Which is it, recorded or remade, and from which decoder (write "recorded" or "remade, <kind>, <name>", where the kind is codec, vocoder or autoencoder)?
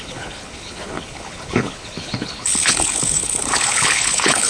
remade, codec, HILCodec